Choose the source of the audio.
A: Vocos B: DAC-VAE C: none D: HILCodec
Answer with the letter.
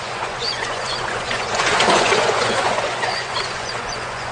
A